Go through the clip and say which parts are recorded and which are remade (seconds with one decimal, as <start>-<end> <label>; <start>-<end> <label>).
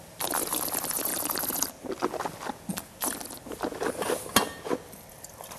0.0-5.6 recorded